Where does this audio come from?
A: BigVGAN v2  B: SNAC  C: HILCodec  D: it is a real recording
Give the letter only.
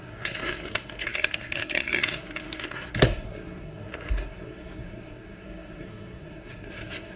B